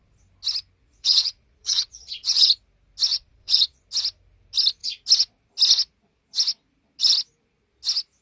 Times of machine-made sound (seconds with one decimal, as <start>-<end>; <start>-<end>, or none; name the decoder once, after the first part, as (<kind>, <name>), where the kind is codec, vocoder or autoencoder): 0.8-2.5 (vocoder, Vocos); 3.1-3.8